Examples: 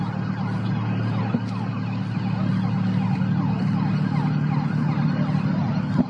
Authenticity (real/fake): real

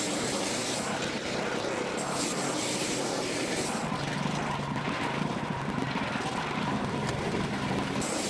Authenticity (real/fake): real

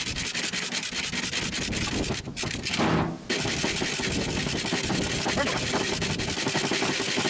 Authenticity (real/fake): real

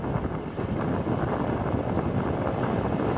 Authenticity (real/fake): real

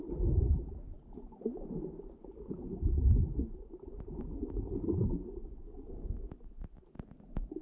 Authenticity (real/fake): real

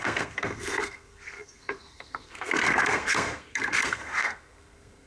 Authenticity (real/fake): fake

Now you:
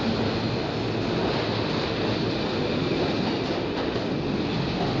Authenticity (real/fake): real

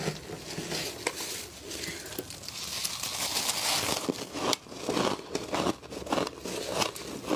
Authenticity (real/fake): real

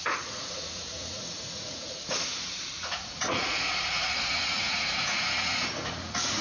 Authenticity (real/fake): fake